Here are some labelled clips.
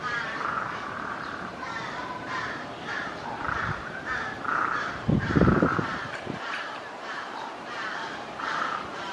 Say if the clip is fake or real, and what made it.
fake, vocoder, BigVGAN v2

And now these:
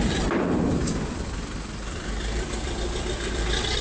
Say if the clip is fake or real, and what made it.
fake, vocoder, BigVGAN v2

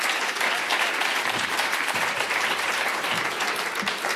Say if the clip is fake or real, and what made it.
fake, vocoder, BigVGAN v2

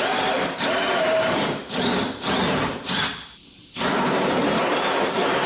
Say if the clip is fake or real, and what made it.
fake, vocoder, BigVGAN v2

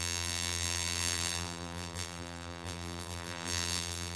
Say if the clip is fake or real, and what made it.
fake, vocoder, BigVGAN v2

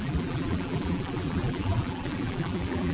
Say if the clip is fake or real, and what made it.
fake, vocoder, BigVGAN v2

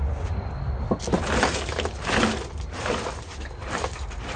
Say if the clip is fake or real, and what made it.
real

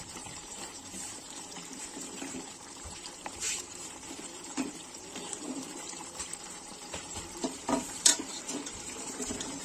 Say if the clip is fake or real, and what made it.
fake, vocoder, BigVGAN v2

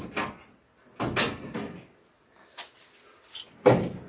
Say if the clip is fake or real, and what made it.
real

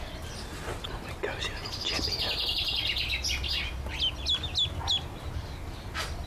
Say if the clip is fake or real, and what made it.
real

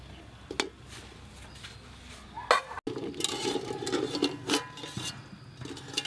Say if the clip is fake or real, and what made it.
real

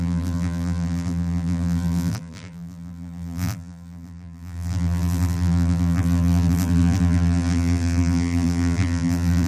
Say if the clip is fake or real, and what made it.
fake, vocoder, BigVGAN v2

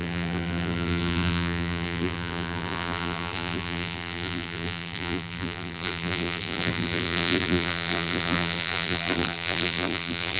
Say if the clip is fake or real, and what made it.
fake, vocoder, BigVGAN v2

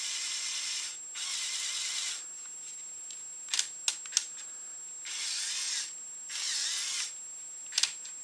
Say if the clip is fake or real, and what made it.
real